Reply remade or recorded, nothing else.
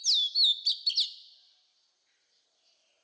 recorded